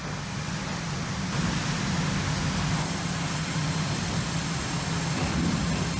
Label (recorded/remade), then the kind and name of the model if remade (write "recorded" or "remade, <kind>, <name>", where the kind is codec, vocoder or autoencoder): recorded